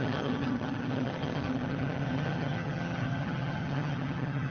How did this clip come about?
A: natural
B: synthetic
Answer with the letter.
B